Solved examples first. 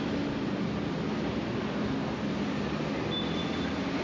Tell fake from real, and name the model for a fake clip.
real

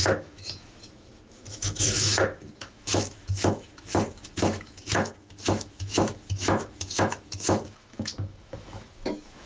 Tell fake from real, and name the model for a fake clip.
fake, autoencoder, DAC-VAE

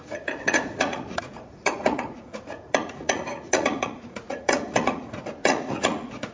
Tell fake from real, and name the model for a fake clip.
fake, vocoder, Vocos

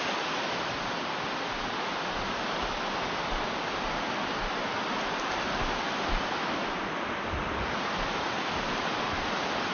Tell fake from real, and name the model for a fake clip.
real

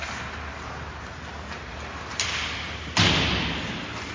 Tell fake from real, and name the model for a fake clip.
real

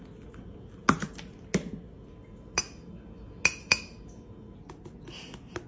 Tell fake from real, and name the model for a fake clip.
real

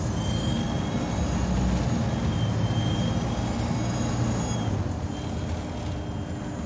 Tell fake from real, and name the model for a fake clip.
real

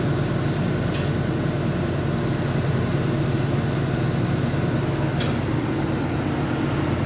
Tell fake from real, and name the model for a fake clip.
real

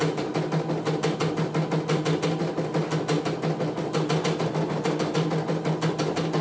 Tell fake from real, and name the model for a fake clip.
real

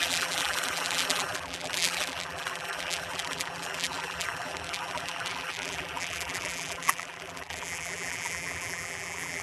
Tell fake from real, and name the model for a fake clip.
fake, vocoder, BigVGAN v2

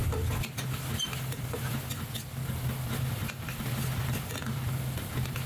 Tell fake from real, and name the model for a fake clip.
real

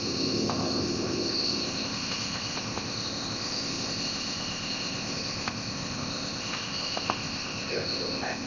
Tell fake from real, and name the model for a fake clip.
fake, codec, ZipCodec